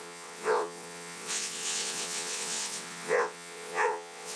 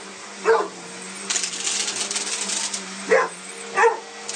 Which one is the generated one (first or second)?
first